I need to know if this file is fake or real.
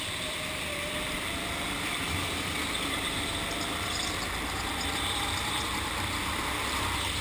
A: fake